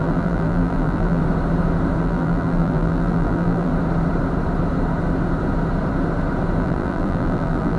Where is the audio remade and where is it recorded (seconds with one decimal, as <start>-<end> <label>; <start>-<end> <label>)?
0.0-1.2 remade; 1.2-2.0 recorded; 2.0-3.7 remade; 3.7-6.6 recorded; 6.6-7.8 remade